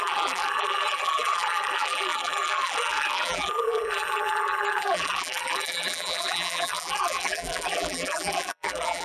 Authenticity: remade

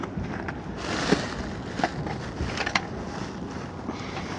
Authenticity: recorded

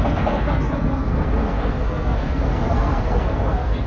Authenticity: remade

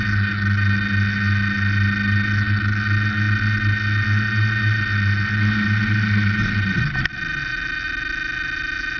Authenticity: recorded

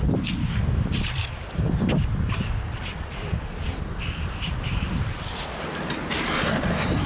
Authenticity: recorded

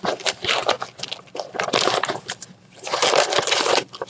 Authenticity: recorded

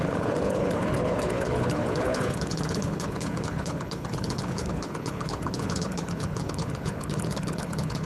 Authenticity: remade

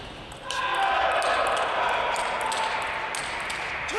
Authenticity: recorded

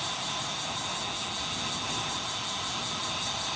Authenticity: recorded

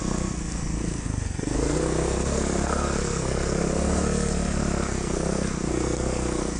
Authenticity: remade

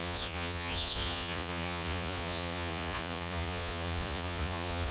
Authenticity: remade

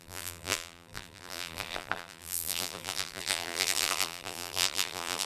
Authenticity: remade